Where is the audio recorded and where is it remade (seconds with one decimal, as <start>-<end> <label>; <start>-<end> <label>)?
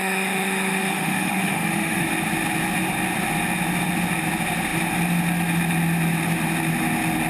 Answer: 0.0-2.0 remade; 2.0-7.3 recorded